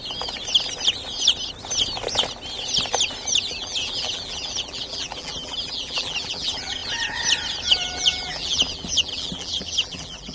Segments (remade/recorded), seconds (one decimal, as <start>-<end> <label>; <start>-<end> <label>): 0.0-3.5 recorded; 3.5-6.8 remade; 6.8-7.8 recorded; 7.8-10.3 remade